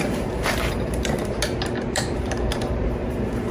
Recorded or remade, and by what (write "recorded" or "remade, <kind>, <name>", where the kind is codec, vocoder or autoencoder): remade, vocoder, BigVGAN v2